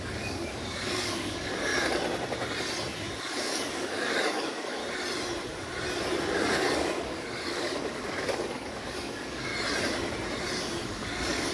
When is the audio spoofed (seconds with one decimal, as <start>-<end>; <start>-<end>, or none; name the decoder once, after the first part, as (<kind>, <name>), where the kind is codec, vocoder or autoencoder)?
0.0-1.7 (codec, DAC); 3.2-4.8; 6.3-9.5; 10.6-11.5